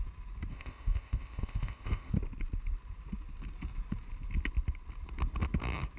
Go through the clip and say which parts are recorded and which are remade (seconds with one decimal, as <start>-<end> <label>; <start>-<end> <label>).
0.0-0.5 recorded; 0.5-2.1 remade; 2.1-6.0 recorded